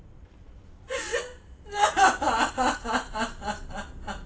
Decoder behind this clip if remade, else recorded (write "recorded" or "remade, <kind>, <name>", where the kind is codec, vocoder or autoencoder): recorded